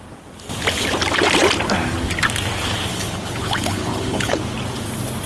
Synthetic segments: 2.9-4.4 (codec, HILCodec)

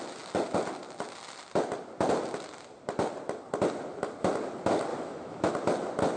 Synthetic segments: 4.9-5.5 (autoencoder, DAC-VAE)

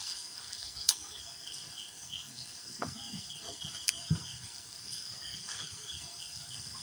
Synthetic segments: 0.0-6.8 (codec, SNAC)

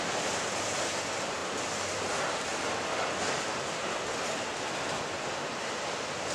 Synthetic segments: 0.0-1.4 (vocoder, BigVGAN v2); 1.9-2.5

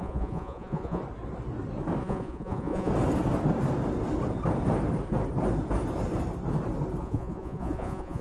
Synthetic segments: 0.0-1.0 (vocoder, Vocos); 2.0-2.9; 7.0-8.2

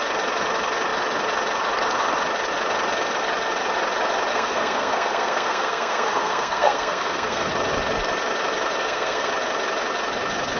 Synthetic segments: 4.3-7.5 (codec, SNAC); 8.8-9.3

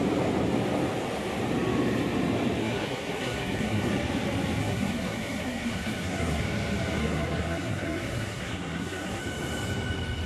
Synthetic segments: 2.6-3.9 (codec, SNAC); 4.6-6.4; 7.0-9.2